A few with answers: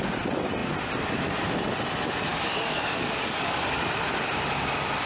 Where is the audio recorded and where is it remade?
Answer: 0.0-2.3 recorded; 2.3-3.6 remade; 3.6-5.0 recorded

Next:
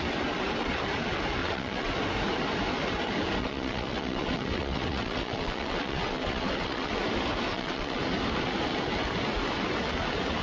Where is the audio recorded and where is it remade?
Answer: 0.0-1.4 recorded; 1.4-1.9 remade; 1.9-3.4 recorded; 3.4-6.9 remade; 6.9-7.5 recorded; 7.5-8.0 remade; 8.0-10.4 recorded

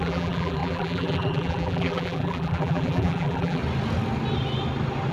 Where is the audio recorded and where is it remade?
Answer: 0.0-3.6 remade; 3.6-5.1 recorded

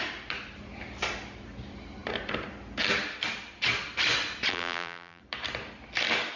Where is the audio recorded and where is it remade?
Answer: 0.0-4.5 recorded; 4.5-5.2 remade; 5.2-6.4 recorded

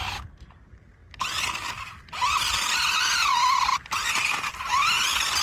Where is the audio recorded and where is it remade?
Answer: 0.0-5.4 recorded

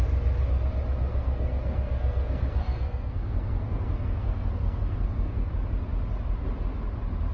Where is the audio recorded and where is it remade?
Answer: 0.0-1.1 recorded; 1.1-5.5 remade; 5.5-7.3 recorded